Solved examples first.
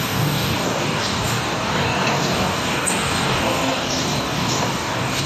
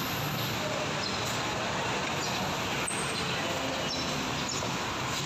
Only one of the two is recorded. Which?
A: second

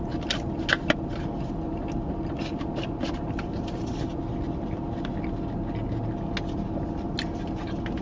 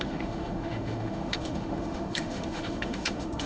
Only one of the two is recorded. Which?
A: first